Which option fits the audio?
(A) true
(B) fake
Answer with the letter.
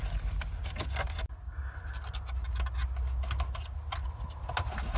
A